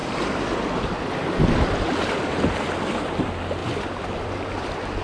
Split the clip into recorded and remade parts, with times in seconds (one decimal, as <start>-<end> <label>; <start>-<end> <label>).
0.0-3.0 remade; 3.0-3.6 recorded; 3.6-5.0 remade

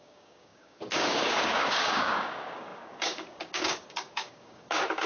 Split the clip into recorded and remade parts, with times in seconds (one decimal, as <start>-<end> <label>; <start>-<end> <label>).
0.0-5.1 remade

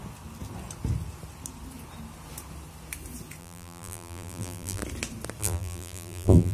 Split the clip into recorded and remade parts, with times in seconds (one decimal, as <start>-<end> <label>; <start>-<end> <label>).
0.0-3.4 recorded; 3.4-4.8 remade; 4.8-5.4 recorded; 5.4-6.5 remade

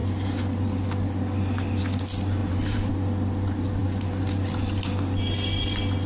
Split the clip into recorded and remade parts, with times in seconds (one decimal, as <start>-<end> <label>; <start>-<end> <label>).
0.0-2.4 recorded; 2.4-2.9 remade; 2.9-6.1 recorded

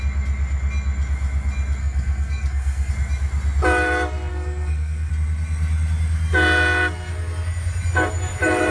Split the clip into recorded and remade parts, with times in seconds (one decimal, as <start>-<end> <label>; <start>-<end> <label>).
0.0-1.8 recorded; 1.8-2.9 remade; 2.9-4.3 recorded; 4.3-5.1 remade; 5.1-8.7 recorded